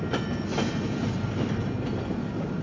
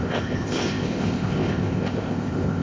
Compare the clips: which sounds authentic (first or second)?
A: first